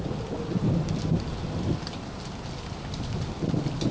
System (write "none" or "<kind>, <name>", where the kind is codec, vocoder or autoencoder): none